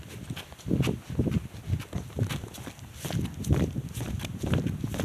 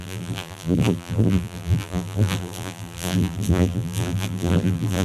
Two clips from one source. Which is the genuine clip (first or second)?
first